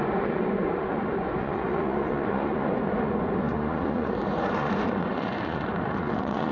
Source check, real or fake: fake